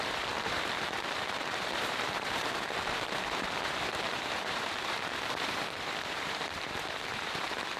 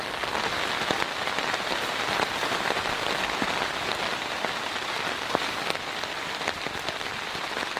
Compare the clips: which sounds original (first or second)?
second